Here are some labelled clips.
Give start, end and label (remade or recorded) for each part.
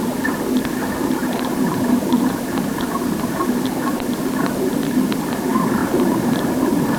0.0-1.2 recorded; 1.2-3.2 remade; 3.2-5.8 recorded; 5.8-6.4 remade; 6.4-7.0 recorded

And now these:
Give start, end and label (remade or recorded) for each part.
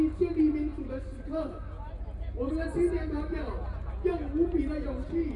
0.0-5.4 recorded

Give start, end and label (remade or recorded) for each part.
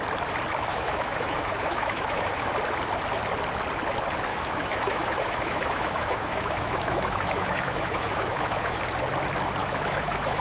0.0-0.7 recorded; 0.7-2.5 remade; 2.5-4.3 recorded; 4.3-8.8 remade; 8.8-9.6 recorded; 9.6-10.4 remade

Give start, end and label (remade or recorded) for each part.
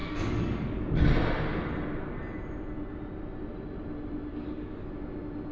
0.0-1.0 remade; 1.0-4.3 recorded; 4.3-4.9 remade; 4.9-5.5 recorded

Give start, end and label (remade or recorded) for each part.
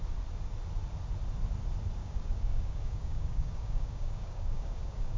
0.0-2.0 recorded; 2.0-5.2 remade